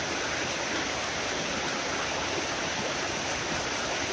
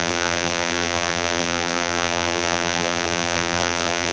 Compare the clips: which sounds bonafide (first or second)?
first